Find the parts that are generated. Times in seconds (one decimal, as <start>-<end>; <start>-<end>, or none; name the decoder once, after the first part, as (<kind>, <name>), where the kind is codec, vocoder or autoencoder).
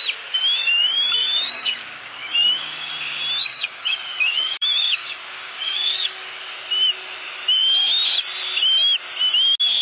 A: 0.6-2.9 (codec, DAC); 3.4-6.4